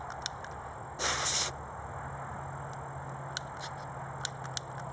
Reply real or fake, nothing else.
real